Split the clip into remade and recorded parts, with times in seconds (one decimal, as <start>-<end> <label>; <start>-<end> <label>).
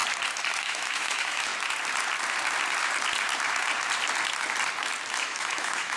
0.0-0.6 recorded; 0.6-1.5 remade; 1.5-5.1 recorded; 5.1-6.0 remade